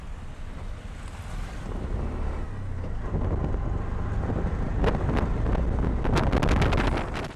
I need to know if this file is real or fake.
real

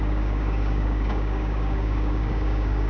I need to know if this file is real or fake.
fake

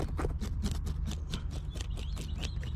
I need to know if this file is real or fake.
real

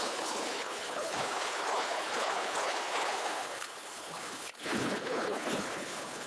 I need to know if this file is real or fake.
fake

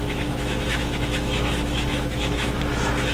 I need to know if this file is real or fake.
fake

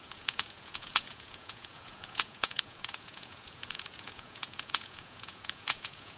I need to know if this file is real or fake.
fake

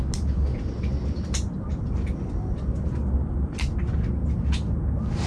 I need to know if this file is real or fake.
real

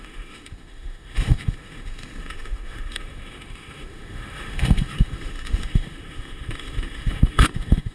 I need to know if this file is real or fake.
fake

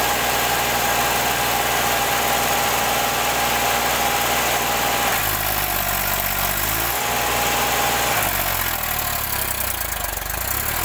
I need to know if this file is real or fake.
real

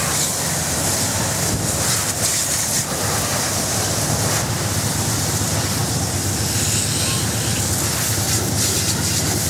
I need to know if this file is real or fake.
real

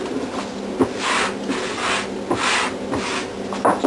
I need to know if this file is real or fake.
real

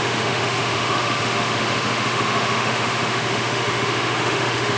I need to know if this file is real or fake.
fake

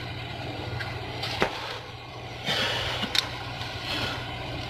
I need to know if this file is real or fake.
fake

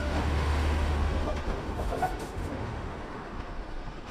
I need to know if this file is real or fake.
fake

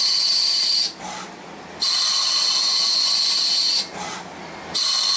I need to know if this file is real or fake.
real